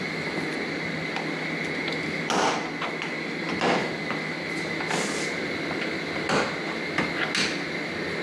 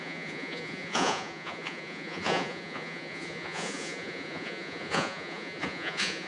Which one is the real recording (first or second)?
first